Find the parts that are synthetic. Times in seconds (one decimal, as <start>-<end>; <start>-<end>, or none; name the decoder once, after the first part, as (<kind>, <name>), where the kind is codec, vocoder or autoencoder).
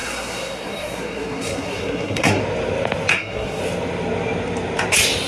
0.0-2.4 (codec, SNAC); 3.1-3.6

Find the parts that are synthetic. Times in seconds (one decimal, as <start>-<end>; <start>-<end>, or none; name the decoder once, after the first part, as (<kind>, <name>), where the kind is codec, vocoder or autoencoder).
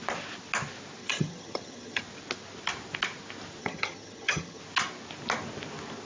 1.0-2.0 (vocoder, HiFi-GAN); 3.6-4.6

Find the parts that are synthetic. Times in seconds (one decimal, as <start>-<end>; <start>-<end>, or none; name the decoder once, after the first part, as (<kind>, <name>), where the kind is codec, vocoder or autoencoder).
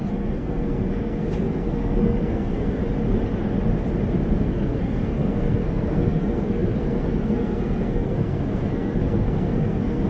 0.0-2.8 (codec, SNAC); 4.4-10.1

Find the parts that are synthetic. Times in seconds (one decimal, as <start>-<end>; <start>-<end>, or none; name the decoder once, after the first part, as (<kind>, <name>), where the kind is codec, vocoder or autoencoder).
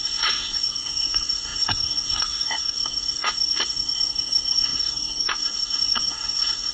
0.0-6.7 (codec, SNAC)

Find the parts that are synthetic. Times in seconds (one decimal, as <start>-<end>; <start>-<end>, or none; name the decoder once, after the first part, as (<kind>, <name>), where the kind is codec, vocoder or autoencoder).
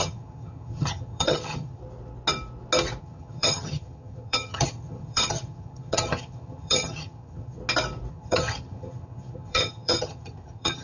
0.0-1.8 (vocoder, HiFi-GAN); 3.0-7.6; 8.1-10.8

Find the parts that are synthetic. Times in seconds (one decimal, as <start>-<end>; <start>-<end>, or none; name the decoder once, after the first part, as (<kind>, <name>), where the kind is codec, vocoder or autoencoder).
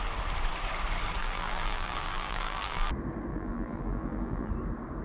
1.2-2.9 (vocoder, BigVGAN v2); 3.3-4.5